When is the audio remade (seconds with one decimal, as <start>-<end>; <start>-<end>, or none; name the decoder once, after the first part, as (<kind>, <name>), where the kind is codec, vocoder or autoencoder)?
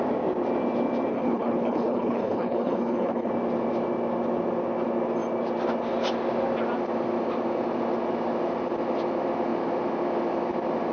1.1-3.3 (codec, HILCodec)